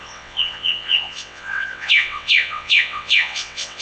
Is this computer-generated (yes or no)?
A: yes